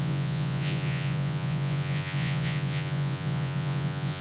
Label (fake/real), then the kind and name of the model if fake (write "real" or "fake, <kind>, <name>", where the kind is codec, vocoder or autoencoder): fake, vocoder, Vocos